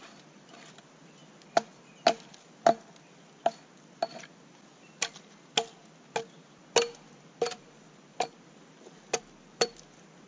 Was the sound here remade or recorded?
recorded